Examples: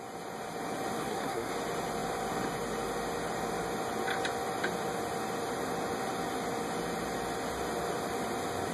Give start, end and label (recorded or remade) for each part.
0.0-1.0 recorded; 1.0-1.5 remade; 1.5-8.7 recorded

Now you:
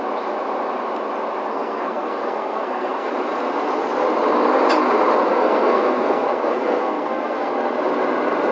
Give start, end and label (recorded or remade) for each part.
0.0-1.5 recorded; 1.5-3.1 remade; 3.1-5.3 recorded; 5.3-7.5 remade; 7.5-8.5 recorded